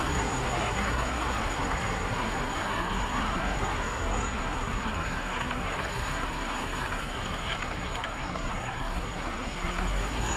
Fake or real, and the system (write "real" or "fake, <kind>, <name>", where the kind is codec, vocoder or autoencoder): fake, codec, SNAC